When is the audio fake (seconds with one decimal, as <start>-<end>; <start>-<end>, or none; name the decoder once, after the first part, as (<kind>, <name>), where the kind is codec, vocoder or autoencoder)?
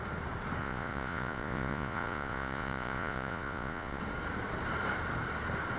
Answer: 0.6-4.0 (vocoder, Vocos)